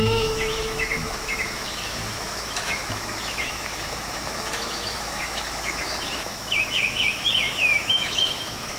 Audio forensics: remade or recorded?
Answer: remade